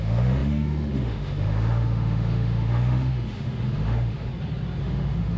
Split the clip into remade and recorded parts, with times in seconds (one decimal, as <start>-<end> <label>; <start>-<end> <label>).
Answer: 0.0-4.3 remade; 4.3-4.8 recorded; 4.8-5.4 remade